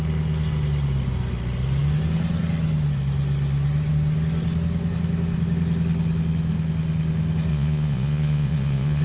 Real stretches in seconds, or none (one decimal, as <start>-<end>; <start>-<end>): 0.0-7.5